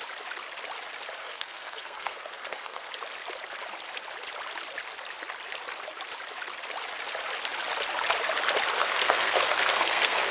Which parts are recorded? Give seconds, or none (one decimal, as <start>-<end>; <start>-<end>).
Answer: 0.0-1.2; 2.9-8.8